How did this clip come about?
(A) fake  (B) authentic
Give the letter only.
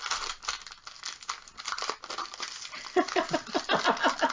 B